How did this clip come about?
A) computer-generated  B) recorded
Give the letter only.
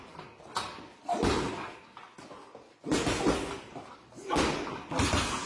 B